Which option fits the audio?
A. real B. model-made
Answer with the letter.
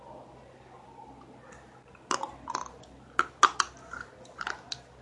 A